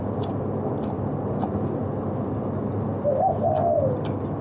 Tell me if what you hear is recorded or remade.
recorded